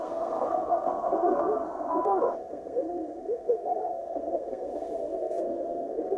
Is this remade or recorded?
remade